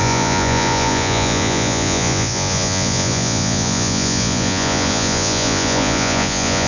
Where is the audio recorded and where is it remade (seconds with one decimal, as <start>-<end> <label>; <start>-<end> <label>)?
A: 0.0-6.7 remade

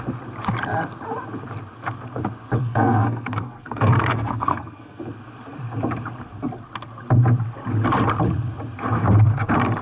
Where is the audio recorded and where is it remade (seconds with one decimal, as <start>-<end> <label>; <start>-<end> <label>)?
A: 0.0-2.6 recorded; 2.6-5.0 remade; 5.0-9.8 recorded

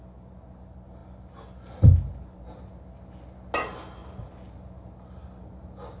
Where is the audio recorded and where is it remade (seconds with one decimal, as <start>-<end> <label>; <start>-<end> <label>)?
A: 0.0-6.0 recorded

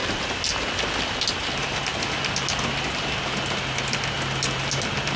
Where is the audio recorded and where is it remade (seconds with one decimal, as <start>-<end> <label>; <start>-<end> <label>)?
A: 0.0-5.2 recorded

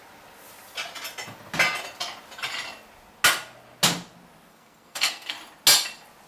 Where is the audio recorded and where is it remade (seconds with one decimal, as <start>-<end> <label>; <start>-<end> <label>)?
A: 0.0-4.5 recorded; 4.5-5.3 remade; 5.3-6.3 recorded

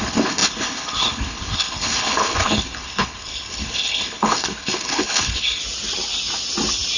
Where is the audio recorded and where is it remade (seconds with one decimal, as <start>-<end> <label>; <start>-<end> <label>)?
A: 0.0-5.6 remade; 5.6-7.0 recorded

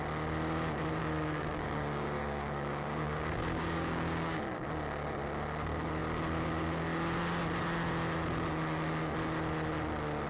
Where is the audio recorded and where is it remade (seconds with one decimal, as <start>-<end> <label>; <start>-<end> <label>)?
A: 0.0-1.0 recorded; 1.0-4.4 remade; 4.4-10.3 recorded

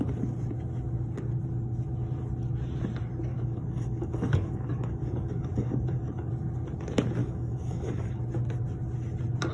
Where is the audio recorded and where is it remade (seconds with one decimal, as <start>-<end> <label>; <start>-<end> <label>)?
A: 0.0-3.3 recorded; 3.3-6.3 remade; 6.3-7.2 recorded; 7.2-8.2 remade; 8.2-9.5 recorded